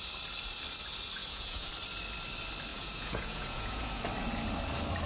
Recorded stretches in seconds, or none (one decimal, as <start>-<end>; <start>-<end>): 0.0-1.2; 1.7-2.7; 4.0-5.1